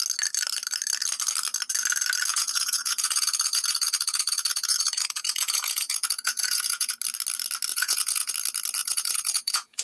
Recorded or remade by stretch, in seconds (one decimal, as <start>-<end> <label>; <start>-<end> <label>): 0.0-2.3 recorded; 2.3-7.0 remade; 7.0-7.7 recorded; 7.7-8.3 remade; 8.3-8.8 recorded; 8.8-9.8 remade